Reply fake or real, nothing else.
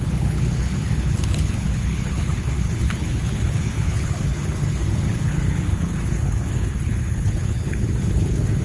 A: fake